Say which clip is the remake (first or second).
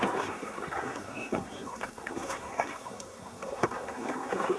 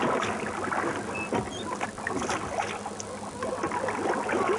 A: first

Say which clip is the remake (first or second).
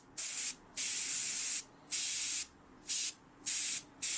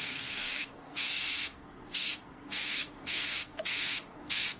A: second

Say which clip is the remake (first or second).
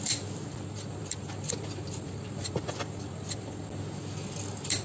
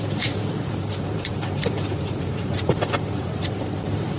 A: second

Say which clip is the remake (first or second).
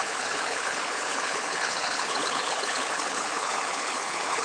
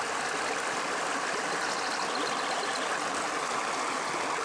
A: first